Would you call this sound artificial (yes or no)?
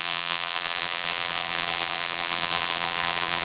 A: yes